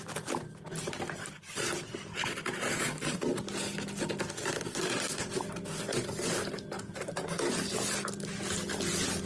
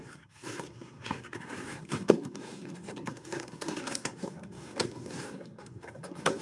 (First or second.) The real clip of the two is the first